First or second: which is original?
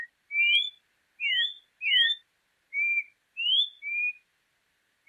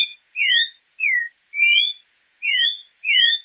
first